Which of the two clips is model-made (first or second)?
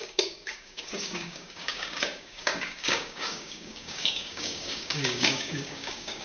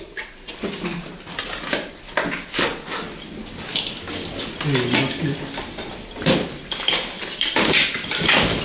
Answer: first